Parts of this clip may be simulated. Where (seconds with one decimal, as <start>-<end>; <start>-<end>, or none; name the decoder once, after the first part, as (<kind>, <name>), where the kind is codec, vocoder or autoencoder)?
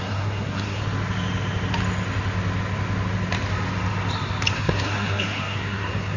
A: 0.0-0.8 (codec, SNAC); 4.5-6.2